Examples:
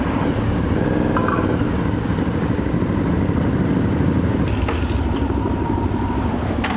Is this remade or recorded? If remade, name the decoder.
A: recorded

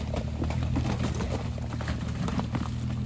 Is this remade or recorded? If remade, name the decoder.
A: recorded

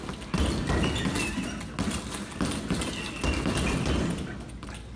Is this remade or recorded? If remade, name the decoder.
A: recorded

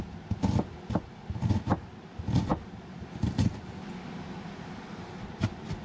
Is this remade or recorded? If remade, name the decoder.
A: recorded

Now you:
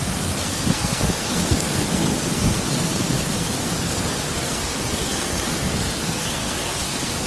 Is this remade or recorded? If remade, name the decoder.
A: remade, codec, SNAC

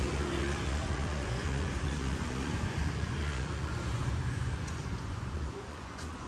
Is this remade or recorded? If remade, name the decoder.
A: remade, vocoder, Vocos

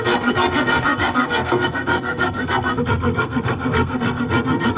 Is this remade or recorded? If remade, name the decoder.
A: remade, codec, SNAC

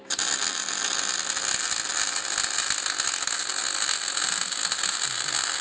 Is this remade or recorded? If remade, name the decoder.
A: recorded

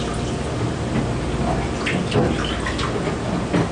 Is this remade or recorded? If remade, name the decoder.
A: recorded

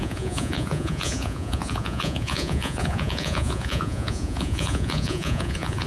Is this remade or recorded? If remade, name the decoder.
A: remade, vocoder, Vocos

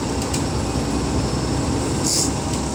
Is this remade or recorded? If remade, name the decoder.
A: recorded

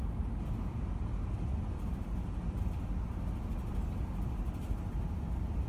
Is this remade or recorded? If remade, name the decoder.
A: recorded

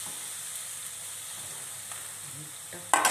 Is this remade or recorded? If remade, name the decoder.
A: recorded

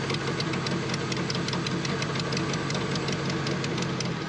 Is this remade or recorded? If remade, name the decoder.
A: recorded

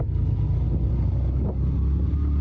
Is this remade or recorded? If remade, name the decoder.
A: recorded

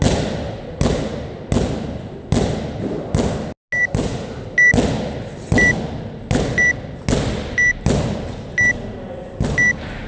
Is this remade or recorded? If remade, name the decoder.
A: recorded